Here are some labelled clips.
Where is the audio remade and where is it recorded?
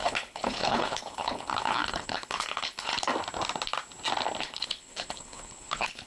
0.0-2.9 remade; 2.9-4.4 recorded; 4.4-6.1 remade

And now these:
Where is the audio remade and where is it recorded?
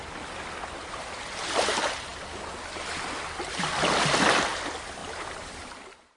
0.0-6.2 recorded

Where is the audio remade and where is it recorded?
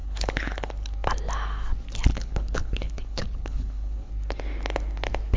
0.0-0.7 remade; 0.7-2.1 recorded; 2.1-4.1 remade; 4.1-5.4 recorded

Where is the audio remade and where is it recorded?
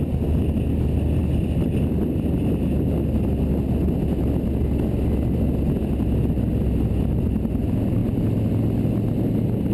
0.0-9.7 recorded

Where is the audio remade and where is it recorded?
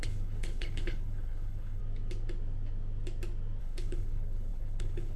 0.0-1.8 remade; 1.8-3.6 recorded; 3.6-5.2 remade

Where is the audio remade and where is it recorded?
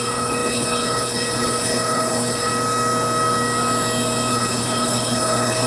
0.0-2.5 remade; 2.5-4.3 recorded; 4.3-5.7 remade